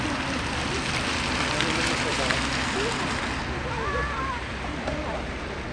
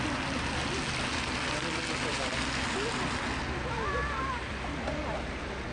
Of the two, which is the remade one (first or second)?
first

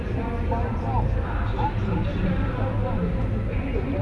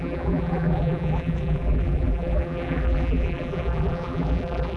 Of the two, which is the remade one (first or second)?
second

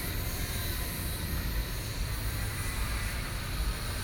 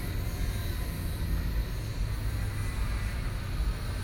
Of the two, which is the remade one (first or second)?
first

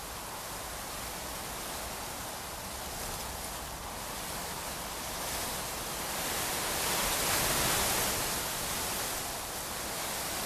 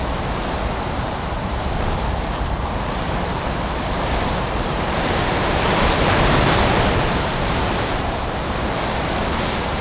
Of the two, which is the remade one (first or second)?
second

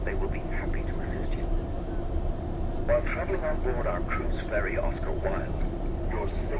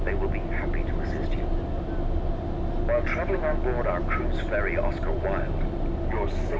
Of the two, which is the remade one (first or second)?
first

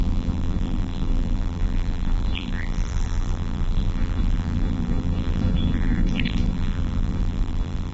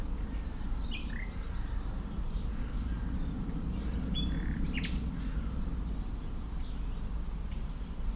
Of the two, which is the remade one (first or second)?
first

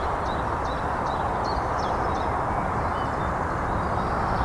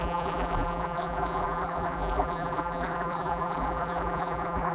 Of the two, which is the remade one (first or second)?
second